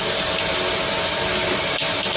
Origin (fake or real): real